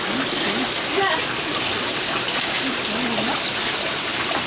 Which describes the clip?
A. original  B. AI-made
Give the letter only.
A